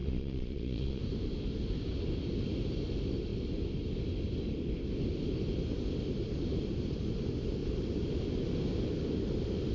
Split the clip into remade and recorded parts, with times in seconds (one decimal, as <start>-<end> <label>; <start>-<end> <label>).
0.0-1.0 remade; 1.0-9.7 recorded